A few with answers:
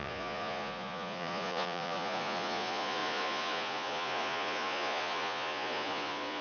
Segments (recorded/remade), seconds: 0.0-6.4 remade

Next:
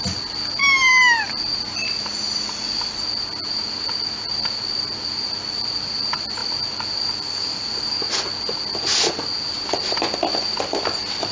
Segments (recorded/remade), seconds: 0.0-11.3 recorded

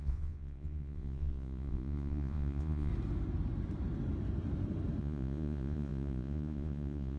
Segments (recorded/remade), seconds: 0.0-2.9 remade; 2.9-5.0 recorded; 5.0-7.2 remade

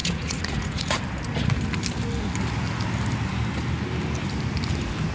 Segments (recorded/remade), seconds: 0.0-1.0 remade; 1.0-5.1 recorded

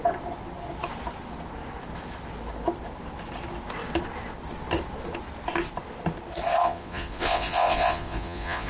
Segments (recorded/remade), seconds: 0.0-6.6 recorded; 6.6-8.7 remade

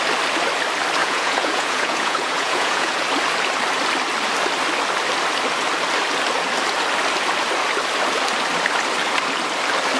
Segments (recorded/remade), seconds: 0.0-1.0 recorded; 1.0-3.0 remade; 3.0-10.0 recorded